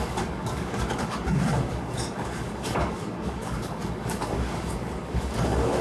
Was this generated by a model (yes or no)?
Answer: yes